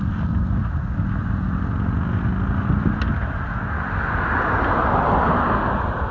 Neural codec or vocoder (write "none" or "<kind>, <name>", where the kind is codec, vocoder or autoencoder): none